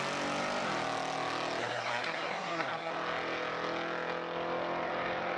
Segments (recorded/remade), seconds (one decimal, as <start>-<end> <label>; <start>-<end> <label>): 0.0-1.6 recorded; 1.6-2.9 remade; 2.9-5.4 recorded